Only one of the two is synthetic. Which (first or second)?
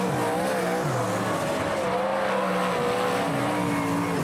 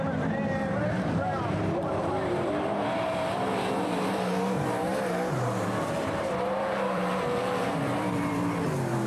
second